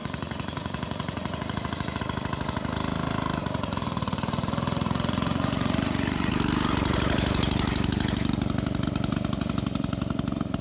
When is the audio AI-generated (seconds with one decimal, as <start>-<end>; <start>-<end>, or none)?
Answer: 0.0-2.0; 3.4-6.3